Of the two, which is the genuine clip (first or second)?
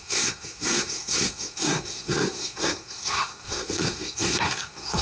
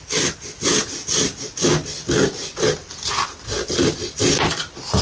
second